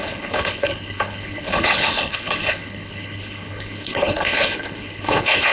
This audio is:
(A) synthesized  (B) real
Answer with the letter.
A